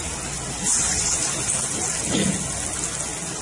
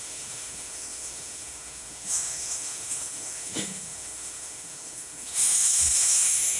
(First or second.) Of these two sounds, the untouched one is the first